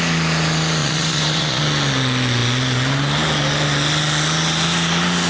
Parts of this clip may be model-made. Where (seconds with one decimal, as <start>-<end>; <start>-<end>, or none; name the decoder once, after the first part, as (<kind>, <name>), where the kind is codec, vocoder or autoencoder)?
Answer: 0.8-1.6 (vocoder, Vocos)